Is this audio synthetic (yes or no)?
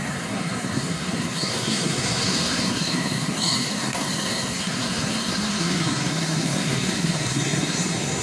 yes